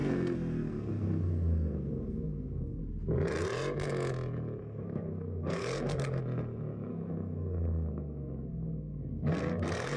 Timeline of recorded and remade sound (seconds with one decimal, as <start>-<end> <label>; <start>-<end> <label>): 0.0-2.8 remade; 2.8-4.6 recorded; 4.6-6.2 remade; 6.2-6.9 recorded; 6.9-10.0 remade